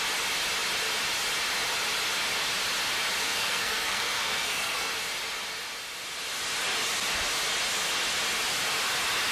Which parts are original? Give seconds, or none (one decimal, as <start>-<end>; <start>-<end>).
0.0-3.2; 4.9-9.3